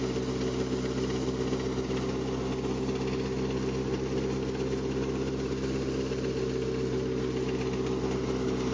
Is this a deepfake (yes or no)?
no